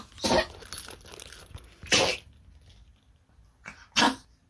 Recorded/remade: recorded